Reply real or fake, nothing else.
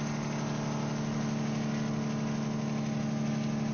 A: real